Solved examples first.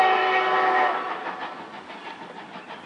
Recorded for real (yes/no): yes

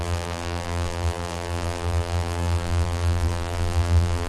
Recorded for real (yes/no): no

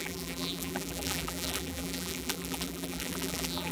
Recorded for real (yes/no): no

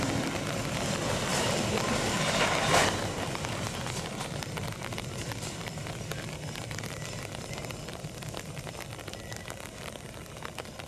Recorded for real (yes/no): no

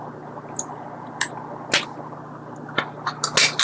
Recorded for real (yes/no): yes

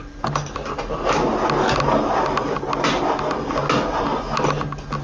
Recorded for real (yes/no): yes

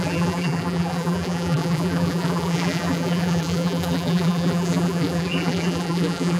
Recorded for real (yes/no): no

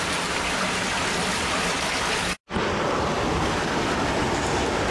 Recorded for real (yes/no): yes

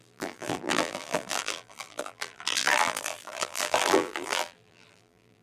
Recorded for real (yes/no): no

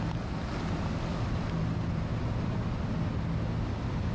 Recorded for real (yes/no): yes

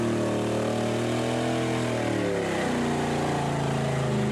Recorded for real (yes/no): yes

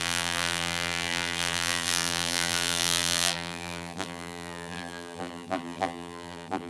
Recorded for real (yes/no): no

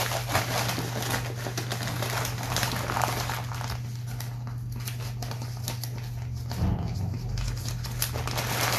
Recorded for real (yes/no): yes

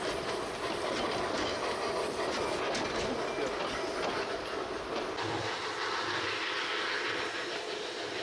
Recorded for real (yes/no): yes